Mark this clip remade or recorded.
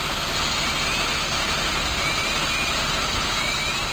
recorded